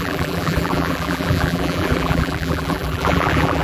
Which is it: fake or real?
fake